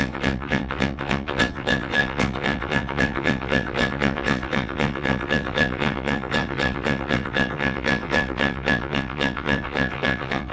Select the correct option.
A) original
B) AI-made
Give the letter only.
B